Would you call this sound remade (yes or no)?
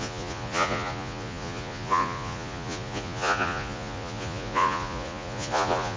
yes